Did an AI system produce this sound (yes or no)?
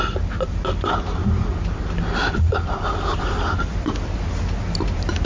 no